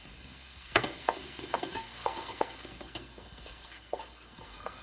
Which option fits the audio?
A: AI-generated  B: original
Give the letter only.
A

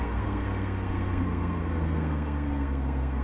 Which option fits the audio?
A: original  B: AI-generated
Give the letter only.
B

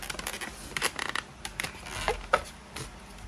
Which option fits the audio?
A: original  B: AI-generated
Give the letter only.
A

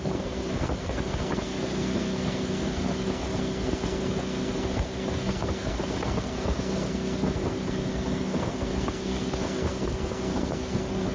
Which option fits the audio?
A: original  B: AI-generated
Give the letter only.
B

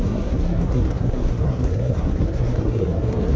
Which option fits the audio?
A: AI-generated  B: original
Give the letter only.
A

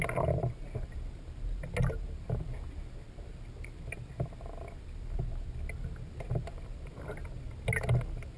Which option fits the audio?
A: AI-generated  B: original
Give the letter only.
B